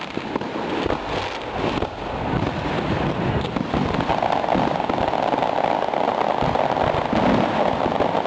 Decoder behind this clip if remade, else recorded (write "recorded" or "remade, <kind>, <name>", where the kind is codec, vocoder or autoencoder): recorded